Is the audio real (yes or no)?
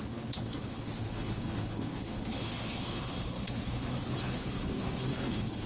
no